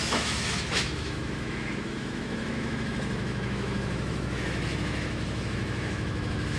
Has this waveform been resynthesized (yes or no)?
yes